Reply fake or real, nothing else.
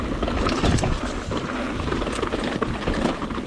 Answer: real